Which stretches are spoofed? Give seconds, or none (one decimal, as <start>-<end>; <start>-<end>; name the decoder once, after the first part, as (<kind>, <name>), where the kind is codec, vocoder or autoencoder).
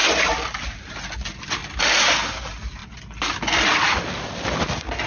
none